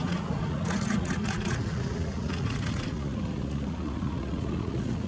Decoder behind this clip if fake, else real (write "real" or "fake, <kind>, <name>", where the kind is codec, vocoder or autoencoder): fake, vocoder, Vocos